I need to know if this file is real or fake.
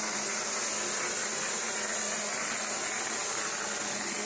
real